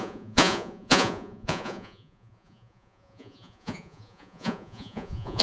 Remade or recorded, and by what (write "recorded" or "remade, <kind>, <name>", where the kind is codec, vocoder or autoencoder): remade, vocoder, Vocos